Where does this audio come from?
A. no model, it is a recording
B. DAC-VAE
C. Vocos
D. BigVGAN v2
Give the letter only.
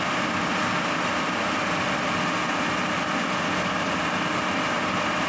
A